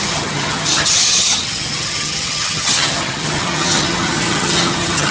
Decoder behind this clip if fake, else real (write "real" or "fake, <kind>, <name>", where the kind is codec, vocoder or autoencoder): fake, vocoder, HiFi-GAN